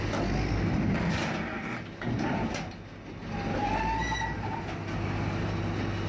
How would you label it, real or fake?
real